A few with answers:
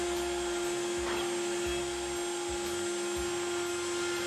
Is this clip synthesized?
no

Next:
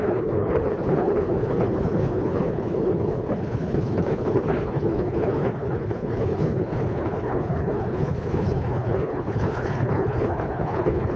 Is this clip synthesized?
yes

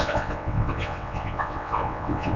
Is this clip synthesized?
yes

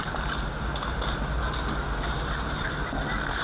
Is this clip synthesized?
no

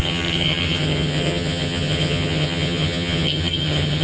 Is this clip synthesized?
yes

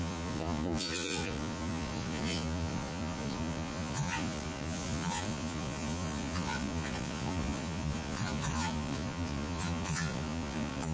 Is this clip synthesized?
yes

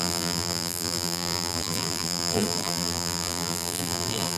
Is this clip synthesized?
yes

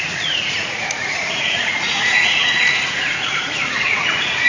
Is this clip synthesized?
yes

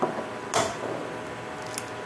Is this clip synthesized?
no